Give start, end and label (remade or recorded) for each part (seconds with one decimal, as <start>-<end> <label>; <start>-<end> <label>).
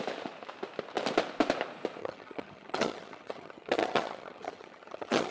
0.0-2.0 recorded; 2.0-5.3 remade